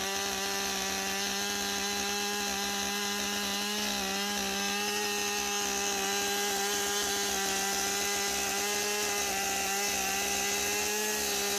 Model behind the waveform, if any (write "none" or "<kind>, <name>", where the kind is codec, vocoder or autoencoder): none